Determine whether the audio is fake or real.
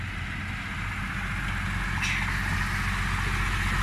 real